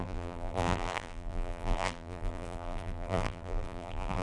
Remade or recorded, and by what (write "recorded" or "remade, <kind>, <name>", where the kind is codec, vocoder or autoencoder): remade, vocoder, BigVGAN v2